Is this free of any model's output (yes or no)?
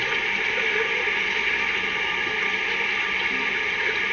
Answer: yes